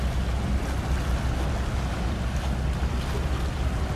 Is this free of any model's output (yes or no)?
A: yes